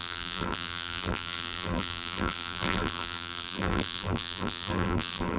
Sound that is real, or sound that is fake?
fake